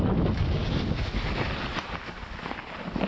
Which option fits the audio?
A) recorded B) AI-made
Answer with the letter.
A